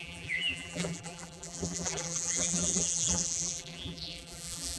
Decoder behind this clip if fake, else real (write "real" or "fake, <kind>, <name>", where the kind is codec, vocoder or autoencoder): fake, vocoder, BigVGAN v2